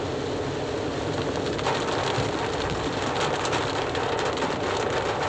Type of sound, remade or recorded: recorded